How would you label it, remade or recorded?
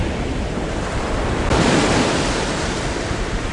remade